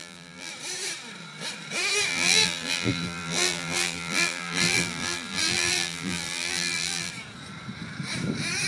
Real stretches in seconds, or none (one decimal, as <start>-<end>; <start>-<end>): 0.5-2.1; 7.1-8.7